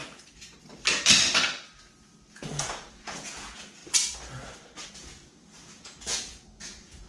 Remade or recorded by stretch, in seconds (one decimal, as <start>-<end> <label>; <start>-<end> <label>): 0.0-2.3 recorded; 2.3-3.8 remade; 3.8-4.9 recorded; 4.9-7.1 remade